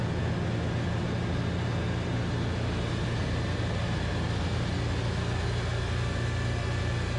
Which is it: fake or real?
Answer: real